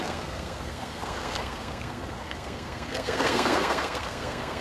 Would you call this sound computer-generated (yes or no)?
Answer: yes